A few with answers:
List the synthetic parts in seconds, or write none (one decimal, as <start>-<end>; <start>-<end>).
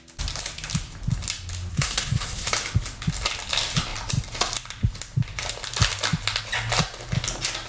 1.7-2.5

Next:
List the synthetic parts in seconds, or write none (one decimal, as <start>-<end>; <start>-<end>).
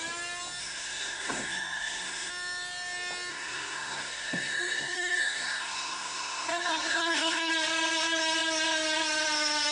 0.6-2.3; 3.3-7.5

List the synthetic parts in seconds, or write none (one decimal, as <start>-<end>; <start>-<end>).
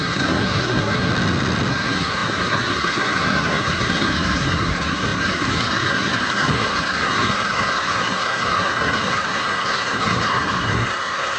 0.0-1.1; 1.7-11.4